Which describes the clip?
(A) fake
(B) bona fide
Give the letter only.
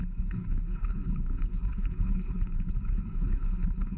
A